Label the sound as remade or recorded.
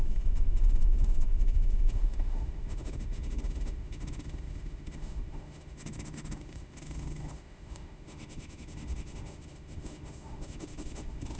remade